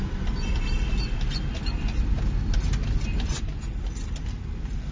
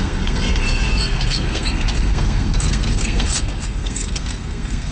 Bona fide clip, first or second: first